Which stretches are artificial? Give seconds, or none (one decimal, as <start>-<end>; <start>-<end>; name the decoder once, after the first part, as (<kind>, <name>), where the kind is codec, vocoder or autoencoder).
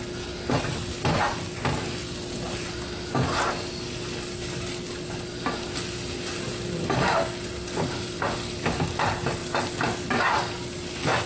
none